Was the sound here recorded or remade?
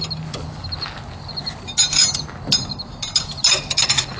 recorded